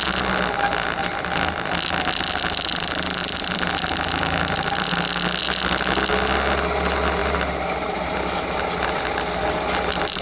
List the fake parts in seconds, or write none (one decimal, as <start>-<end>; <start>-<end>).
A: 3.2-4.9; 7.2-9.3